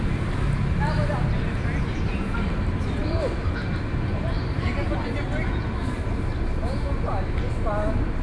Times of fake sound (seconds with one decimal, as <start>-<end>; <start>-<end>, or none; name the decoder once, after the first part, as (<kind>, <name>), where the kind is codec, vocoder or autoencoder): none